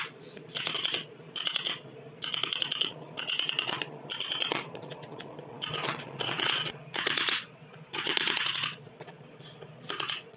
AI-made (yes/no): yes